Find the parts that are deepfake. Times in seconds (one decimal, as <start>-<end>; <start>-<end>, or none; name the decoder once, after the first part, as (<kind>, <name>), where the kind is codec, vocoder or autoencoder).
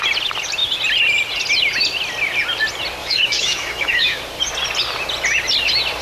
3.0-4.2 (autoencoder, DAC-VAE)